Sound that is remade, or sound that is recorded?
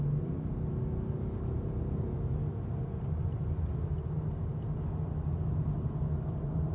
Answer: recorded